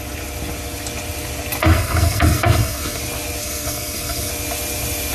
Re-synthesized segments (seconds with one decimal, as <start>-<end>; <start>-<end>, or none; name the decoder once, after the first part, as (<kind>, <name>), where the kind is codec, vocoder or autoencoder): 1.6-3.0 (codec, SNAC); 3.4-4.3